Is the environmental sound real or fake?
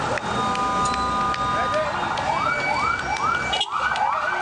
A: real